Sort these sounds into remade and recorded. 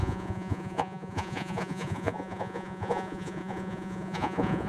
remade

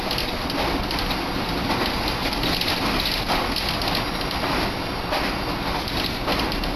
recorded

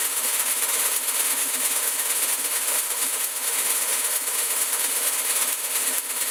remade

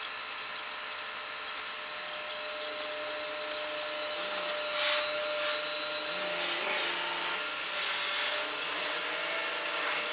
recorded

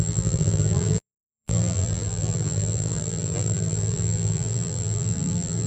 remade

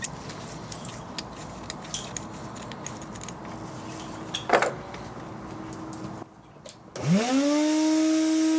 recorded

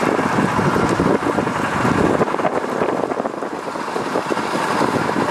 recorded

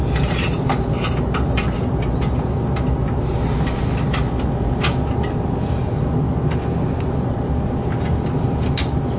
recorded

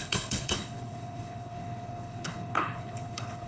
remade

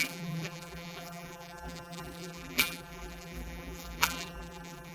remade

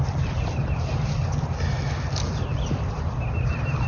recorded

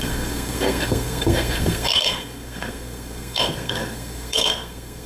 remade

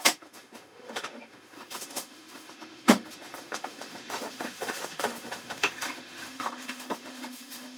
remade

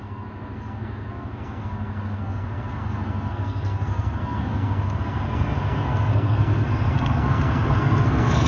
remade